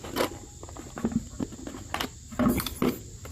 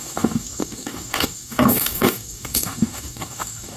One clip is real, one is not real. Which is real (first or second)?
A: first